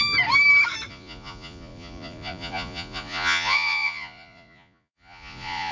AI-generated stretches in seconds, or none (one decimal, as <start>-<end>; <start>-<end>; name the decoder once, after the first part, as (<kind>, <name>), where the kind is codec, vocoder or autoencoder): 0.9-5.7 (vocoder, Vocos)